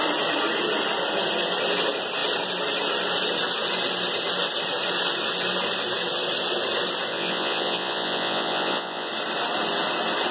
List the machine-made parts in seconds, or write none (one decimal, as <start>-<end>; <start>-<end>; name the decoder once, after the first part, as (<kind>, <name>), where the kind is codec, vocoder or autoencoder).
7.1-9.1 (vocoder, Vocos)

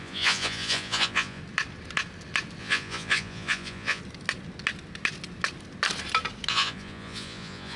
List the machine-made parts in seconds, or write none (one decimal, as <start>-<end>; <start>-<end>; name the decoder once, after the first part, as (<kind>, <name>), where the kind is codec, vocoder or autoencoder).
0.0-1.4 (vocoder, Vocos); 2.6-4.0; 6.5-7.8

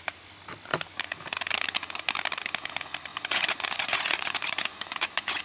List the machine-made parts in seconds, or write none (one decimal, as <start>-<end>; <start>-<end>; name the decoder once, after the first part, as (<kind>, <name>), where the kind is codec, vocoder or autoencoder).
3.1-5.4 (vocoder, Vocos)

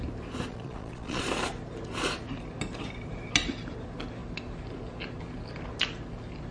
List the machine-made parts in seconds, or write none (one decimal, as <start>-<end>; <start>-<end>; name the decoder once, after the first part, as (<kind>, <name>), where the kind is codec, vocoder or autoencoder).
0.5-1.2 (vocoder, Vocos)

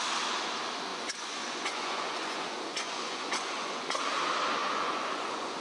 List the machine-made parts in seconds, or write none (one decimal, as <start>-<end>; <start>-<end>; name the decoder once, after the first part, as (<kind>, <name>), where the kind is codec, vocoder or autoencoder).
0.9-4.0 (vocoder, Vocos); 4.6-5.6

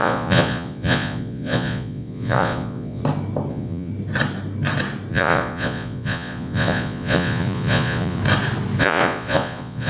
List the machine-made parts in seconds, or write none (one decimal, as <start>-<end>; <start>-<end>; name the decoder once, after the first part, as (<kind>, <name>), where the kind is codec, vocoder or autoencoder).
0.0-3.0 (vocoder, Vocos); 3.5-3.9; 5.1-8.2; 8.8-9.9

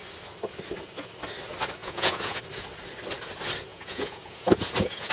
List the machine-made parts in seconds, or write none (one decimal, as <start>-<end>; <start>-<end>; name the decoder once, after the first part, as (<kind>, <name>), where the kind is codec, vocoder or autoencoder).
1.8-2.4 (vocoder, Vocos); 3.7-5.1